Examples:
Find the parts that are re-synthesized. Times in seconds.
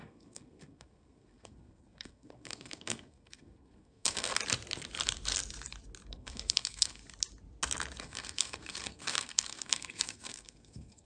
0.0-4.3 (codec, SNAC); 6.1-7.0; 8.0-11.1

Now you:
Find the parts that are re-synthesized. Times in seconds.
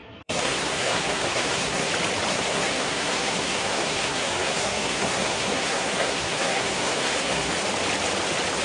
0.0-1.9 (codec, SNAC); 2.3-7.5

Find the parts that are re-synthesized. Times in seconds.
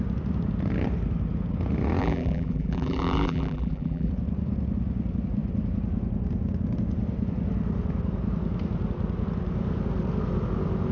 2.0-4.1 (vocoder, BigVGAN v2)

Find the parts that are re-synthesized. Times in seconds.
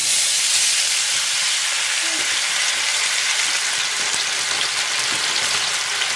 none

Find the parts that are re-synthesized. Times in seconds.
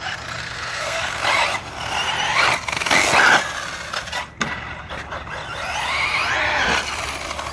0.4-1.2 (codec, SNAC)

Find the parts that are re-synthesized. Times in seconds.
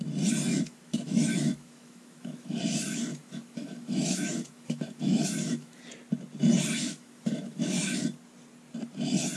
0.5-2.6 (autoencoder, DAC-VAE); 3.1-5.8; 6.8-8.0